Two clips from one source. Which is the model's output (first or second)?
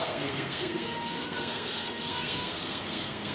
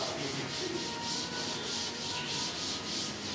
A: first